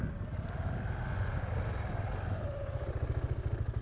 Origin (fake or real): real